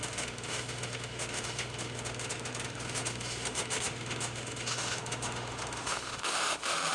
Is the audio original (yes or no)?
no